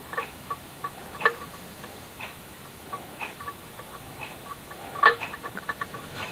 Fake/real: fake